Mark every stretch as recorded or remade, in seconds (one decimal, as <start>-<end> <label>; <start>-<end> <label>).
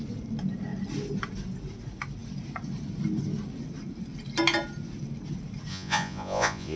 0.0-5.7 recorded; 5.7-6.8 remade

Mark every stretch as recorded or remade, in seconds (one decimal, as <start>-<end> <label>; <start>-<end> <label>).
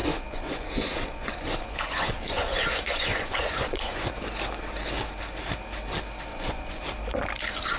0.0-4.1 remade; 4.1-6.3 recorded; 6.3-6.8 remade; 6.8-7.8 recorded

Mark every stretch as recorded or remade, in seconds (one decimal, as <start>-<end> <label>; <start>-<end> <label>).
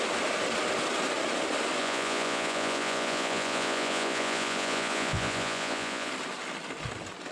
0.0-1.8 recorded; 1.8-6.1 remade; 6.1-7.3 recorded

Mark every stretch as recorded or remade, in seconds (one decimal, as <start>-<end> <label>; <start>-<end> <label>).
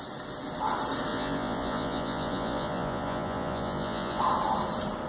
0.0-1.1 recorded; 1.1-4.2 remade; 4.2-5.1 recorded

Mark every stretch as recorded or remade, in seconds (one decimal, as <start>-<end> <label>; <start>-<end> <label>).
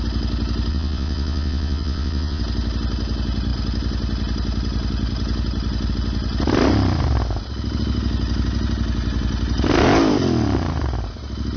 0.0-0.7 recorded; 0.7-2.4 remade; 2.4-11.6 recorded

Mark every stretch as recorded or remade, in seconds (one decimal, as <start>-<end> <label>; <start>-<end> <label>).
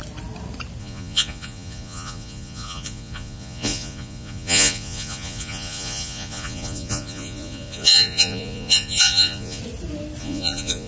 0.0-0.8 recorded; 0.8-9.6 remade; 9.6-10.2 recorded; 10.2-10.9 remade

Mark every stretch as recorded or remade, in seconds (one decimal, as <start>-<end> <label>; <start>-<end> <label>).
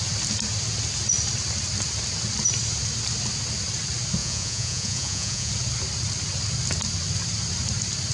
0.0-4.2 recorded; 4.2-5.5 remade; 5.5-8.1 recorded